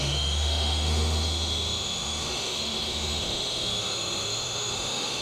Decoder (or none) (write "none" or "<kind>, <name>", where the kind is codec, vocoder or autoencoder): autoencoder, DAC-VAE